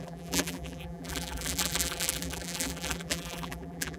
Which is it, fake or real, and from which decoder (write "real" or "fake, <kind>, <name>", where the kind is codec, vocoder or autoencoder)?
fake, vocoder, BigVGAN v2